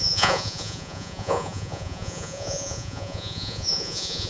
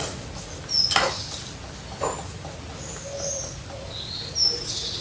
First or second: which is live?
second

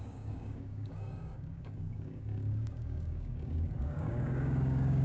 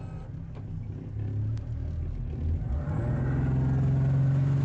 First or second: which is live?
second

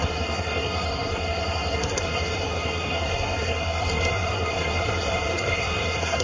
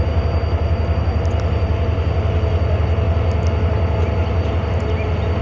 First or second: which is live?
second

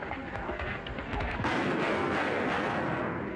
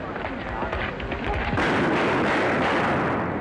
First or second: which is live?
second